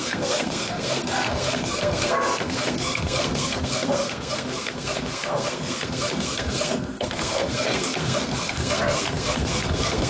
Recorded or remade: remade